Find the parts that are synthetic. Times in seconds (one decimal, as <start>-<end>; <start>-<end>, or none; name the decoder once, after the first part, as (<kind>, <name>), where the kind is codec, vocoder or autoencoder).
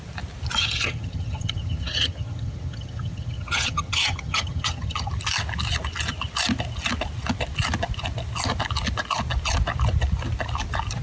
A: 0.6-5.1 (vocoder, HiFi-GAN)